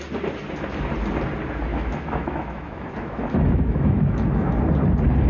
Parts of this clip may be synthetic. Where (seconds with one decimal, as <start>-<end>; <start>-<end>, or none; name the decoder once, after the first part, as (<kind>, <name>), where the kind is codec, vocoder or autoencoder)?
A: 1.7-4.6 (autoencoder, DAC-VAE)